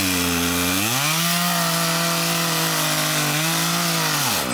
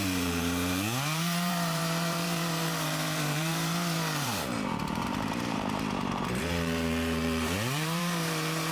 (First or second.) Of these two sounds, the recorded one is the first